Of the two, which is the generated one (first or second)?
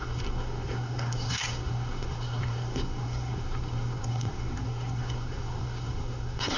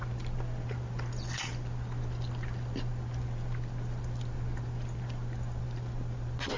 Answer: first